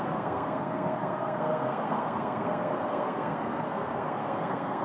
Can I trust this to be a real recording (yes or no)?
no